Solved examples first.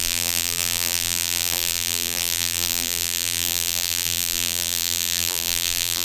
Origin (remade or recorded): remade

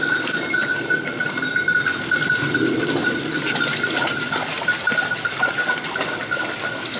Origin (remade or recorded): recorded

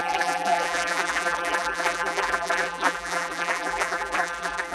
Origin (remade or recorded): remade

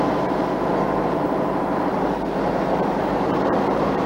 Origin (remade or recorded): remade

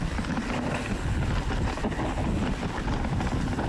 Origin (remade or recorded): recorded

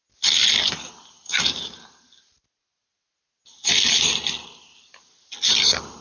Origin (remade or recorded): recorded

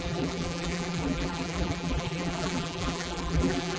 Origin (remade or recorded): remade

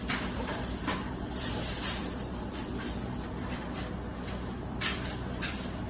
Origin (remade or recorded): remade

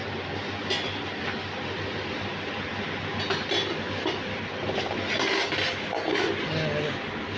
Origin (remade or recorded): recorded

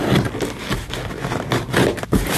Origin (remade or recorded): recorded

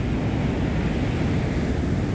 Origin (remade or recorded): recorded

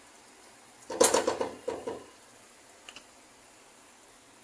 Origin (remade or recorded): recorded